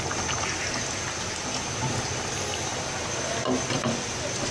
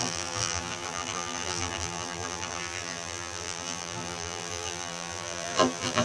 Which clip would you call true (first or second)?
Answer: first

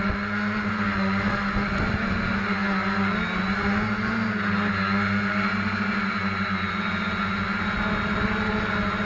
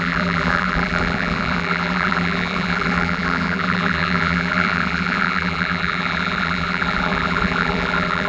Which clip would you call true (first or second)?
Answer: first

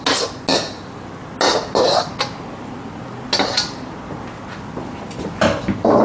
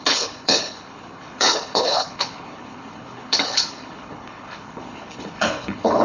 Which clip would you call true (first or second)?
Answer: first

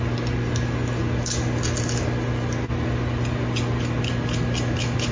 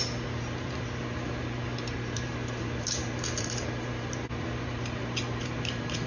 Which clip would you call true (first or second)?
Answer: first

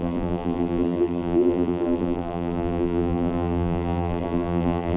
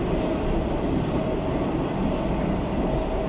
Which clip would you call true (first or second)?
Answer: second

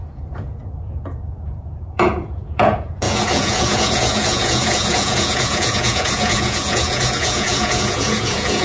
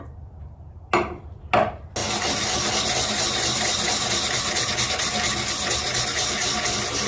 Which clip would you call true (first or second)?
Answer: second